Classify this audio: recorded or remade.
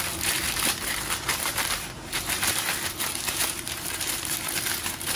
remade